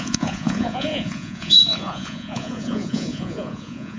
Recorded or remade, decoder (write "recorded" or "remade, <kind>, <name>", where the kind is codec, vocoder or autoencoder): remade, vocoder, Vocos